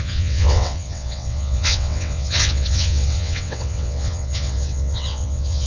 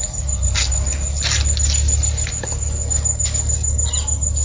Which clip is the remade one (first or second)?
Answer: first